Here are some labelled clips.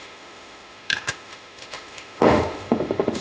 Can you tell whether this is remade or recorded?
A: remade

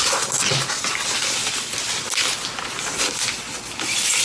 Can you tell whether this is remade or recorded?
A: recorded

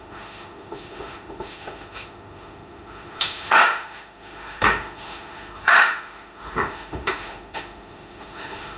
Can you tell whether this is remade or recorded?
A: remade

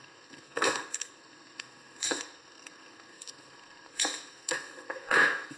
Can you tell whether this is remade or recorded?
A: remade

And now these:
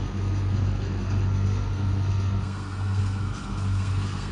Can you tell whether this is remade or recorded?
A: remade